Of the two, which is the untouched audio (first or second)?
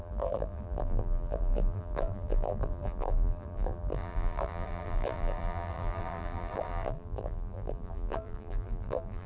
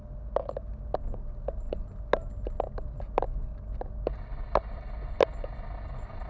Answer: second